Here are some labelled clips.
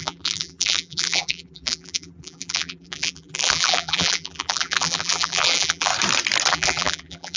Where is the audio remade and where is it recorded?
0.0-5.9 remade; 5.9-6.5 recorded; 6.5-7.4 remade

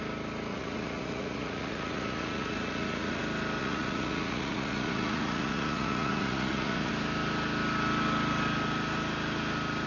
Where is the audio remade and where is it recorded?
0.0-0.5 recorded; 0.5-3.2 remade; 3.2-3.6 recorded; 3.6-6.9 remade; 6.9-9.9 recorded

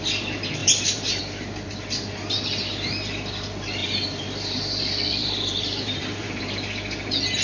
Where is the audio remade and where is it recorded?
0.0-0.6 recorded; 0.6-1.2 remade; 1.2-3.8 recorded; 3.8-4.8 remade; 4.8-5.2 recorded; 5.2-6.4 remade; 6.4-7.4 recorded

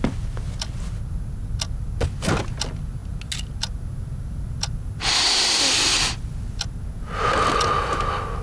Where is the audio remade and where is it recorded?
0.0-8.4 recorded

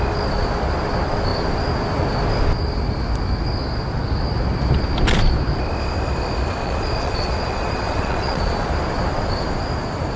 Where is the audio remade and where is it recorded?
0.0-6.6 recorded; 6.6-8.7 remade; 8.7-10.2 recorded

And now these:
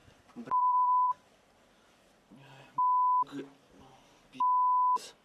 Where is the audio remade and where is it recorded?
0.0-2.3 remade; 2.3-5.2 recorded

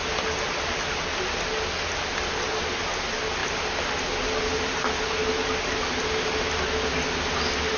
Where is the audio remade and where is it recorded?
0.0-7.8 recorded